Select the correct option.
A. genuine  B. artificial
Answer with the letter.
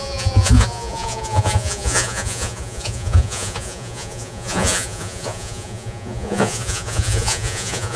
B